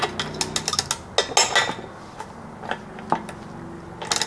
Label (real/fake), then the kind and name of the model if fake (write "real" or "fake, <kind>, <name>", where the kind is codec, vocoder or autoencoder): real